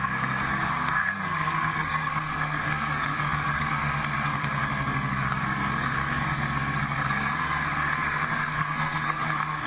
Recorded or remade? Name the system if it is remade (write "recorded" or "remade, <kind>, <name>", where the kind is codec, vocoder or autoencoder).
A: remade, codec, SNAC